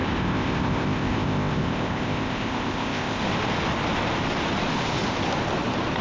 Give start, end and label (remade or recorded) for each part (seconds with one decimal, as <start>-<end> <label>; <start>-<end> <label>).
0.0-3.2 remade; 3.2-6.0 recorded